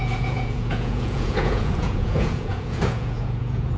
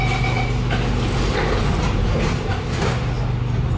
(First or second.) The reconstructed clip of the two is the first